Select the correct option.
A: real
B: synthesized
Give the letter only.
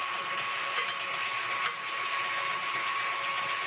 A